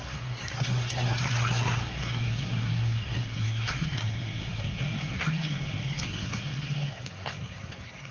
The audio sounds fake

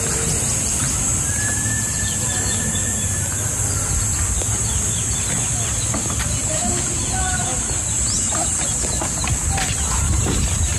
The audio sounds real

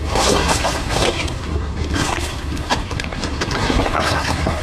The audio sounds fake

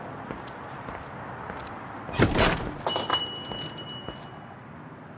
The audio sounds real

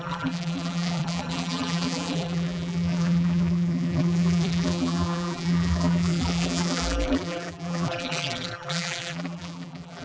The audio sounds fake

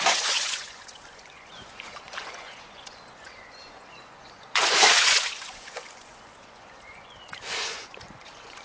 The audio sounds fake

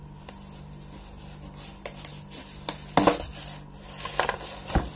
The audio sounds real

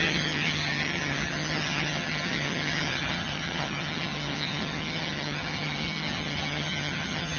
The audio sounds fake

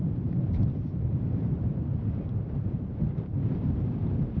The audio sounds fake